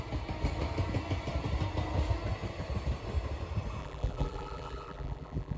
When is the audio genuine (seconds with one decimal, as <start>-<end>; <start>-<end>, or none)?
0.0-3.8